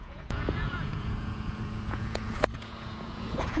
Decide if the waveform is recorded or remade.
remade